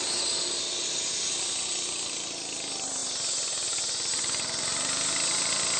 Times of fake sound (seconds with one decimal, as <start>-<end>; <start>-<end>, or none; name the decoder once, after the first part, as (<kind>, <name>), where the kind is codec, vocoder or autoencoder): none